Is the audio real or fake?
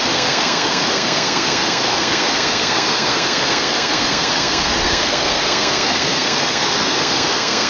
fake